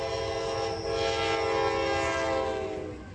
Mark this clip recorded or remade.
recorded